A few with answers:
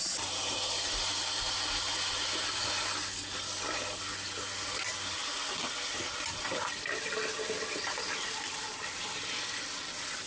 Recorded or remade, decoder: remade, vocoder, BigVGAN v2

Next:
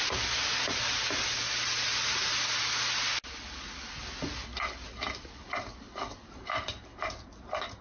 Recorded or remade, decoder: recorded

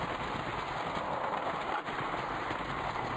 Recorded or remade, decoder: recorded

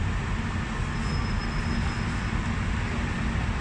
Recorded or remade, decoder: recorded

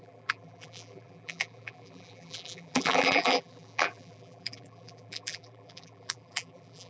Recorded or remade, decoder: remade, vocoder, BigVGAN v2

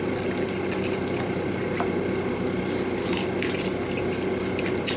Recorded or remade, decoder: recorded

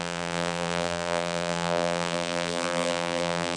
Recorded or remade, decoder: remade, vocoder, BigVGAN v2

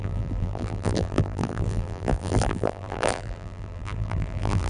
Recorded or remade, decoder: remade, vocoder, BigVGAN v2